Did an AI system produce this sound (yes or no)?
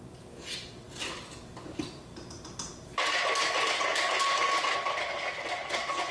no